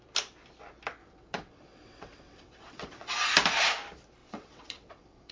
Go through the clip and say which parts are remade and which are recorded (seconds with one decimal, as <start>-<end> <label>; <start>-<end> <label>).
0.0-1.0 recorded; 1.0-3.1 remade; 3.1-4.2 recorded; 4.2-5.3 remade